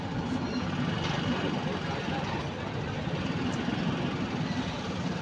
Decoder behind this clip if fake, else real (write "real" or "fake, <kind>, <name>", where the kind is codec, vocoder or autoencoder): real